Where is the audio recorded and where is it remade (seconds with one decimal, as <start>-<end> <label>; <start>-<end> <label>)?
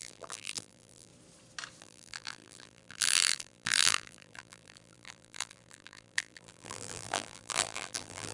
0.0-1.1 remade; 1.1-1.8 recorded; 1.8-8.3 remade